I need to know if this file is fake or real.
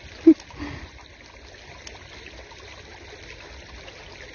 real